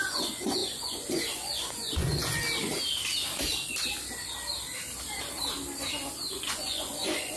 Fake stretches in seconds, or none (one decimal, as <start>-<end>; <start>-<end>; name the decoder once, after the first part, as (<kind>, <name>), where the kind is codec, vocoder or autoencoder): 0.0-2.4 (vocoder, Vocos); 6.3-7.4